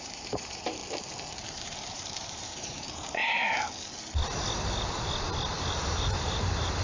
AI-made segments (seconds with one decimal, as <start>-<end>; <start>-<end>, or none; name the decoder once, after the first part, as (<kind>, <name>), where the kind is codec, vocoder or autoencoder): 0.0-0.8 (vocoder, BigVGAN v2); 1.3-3.2; 5.6-6.8